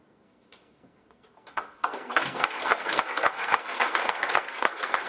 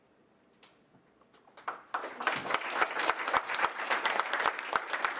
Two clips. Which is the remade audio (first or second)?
first